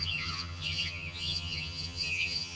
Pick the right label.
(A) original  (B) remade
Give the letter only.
B